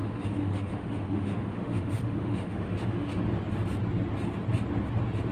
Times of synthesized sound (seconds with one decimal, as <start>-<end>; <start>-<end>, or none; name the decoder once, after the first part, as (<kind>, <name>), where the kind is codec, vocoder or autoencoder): 0.0-3.2 (autoencoder, DAC-VAE)